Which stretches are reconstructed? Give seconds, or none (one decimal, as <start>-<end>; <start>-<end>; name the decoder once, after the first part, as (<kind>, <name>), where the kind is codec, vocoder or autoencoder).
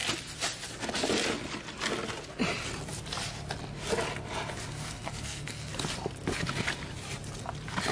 4.7-5.7 (codec, SNAC)